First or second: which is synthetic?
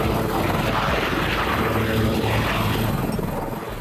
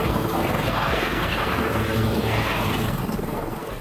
second